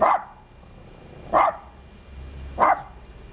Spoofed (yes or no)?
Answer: no